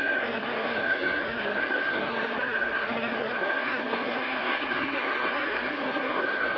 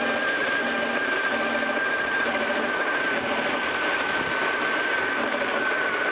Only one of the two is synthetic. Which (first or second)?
first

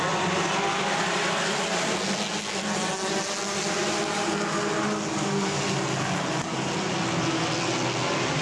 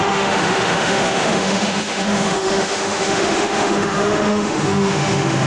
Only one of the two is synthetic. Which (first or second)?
second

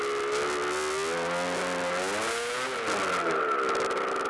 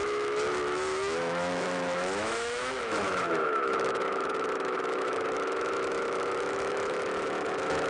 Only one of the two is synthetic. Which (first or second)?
second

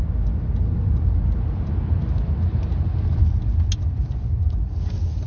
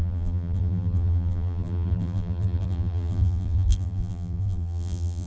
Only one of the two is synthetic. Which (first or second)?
second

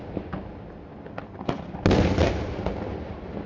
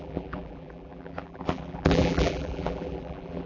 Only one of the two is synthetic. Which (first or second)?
second